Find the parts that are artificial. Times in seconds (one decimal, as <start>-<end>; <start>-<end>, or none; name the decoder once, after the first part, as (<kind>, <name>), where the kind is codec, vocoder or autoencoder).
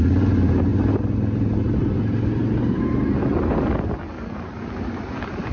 none